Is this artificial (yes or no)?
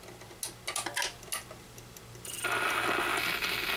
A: no